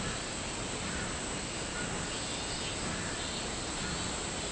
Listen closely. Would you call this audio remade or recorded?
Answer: recorded